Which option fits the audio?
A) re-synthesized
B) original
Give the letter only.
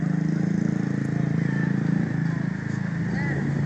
B